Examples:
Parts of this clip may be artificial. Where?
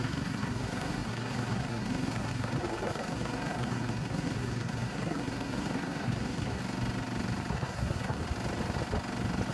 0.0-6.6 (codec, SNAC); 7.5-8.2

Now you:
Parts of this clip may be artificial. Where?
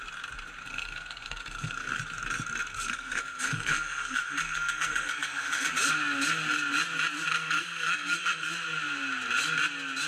0.6-2.0 (codec, SNAC); 2.7-5.7; 7.3-8.5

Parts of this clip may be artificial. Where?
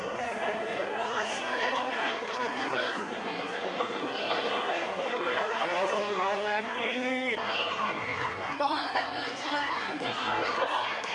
0.0-11.1 (codec, SNAC)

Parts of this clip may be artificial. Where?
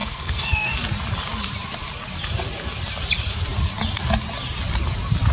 0.0-0.7 (codec, SNAC)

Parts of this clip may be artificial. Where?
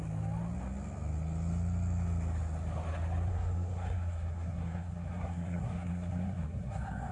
3.3-7.1 (codec, SNAC)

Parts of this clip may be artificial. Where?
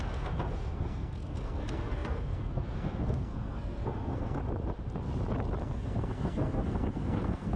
0.0-4.4 (codec, SNAC); 5.6-7.6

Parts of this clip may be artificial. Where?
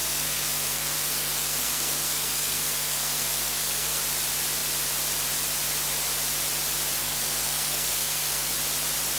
0.0-4.0 (codec, SNAC); 7.0-8.5